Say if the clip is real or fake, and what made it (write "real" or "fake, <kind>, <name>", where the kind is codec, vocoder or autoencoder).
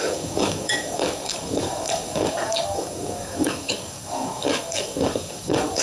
fake, codec, DAC